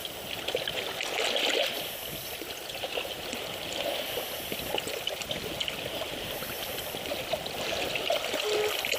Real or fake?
real